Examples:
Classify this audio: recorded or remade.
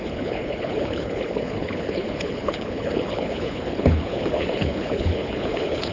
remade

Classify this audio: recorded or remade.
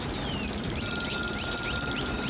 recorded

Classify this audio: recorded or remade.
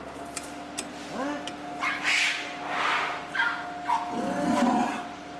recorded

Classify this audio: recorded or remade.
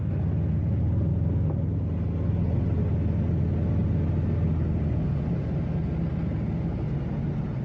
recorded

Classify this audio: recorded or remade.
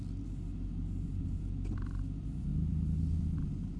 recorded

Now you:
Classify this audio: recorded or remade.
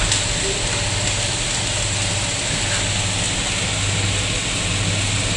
recorded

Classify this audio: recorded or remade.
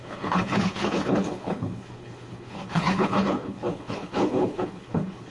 remade